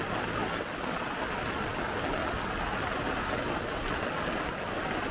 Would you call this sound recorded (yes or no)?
yes